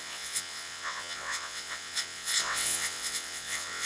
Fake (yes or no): yes